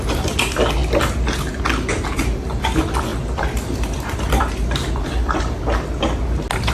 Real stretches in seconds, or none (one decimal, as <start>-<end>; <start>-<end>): 0.0-3.1; 5.6-6.7